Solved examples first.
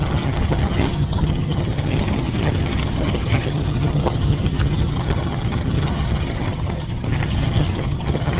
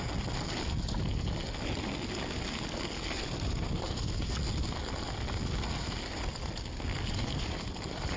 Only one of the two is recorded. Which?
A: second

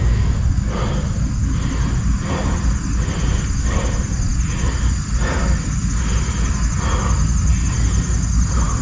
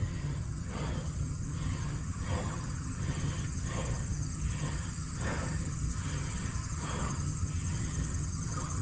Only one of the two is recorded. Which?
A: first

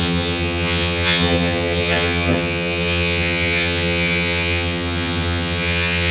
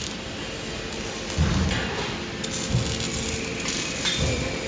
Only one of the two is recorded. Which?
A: second